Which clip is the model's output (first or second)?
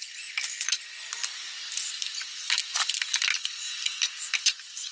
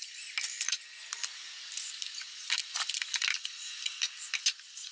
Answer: second